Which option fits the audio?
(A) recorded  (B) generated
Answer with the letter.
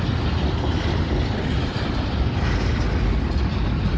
A